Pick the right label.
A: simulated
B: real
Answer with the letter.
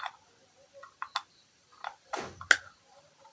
B